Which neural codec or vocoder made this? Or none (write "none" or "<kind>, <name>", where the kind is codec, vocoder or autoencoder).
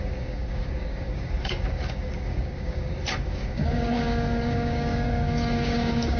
codec, DAC